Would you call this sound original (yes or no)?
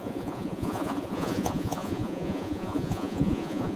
no